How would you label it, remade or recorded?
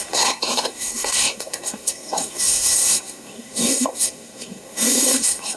remade